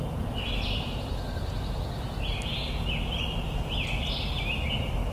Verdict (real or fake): real